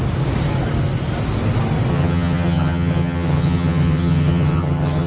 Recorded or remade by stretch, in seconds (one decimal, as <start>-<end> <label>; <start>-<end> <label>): 0.0-1.9 recorded; 1.9-5.1 remade